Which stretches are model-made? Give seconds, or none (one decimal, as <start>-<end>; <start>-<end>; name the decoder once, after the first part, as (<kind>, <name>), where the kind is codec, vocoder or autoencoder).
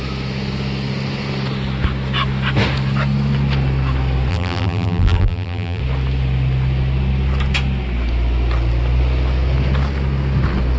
4.3-5.8 (vocoder, BigVGAN v2)